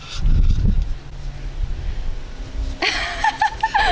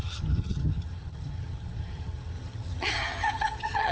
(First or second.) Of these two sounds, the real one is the first